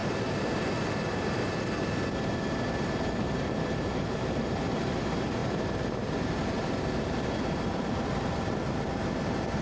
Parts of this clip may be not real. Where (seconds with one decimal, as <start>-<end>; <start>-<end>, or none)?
2.1-9.6

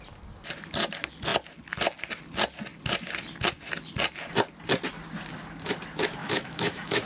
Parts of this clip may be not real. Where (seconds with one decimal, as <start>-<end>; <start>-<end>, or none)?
6.2-7.1

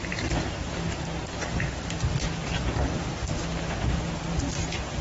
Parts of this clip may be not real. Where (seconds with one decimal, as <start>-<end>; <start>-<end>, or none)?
0.0-0.7

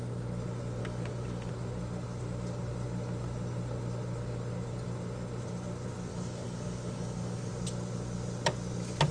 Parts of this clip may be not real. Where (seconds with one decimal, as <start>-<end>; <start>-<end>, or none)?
0.8-1.5; 6.1-7.5

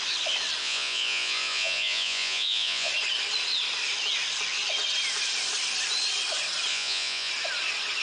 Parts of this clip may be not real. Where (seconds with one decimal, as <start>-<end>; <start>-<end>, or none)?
0.6-2.9; 6.7-7.3

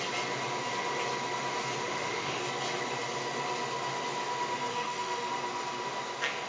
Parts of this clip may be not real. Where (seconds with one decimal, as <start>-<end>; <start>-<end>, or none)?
1.8-2.4; 4.7-5.3

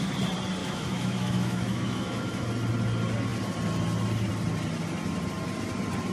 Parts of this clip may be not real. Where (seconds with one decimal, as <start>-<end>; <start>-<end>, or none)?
0.6-2.5